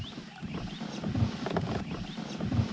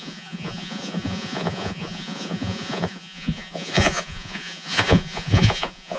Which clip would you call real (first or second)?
first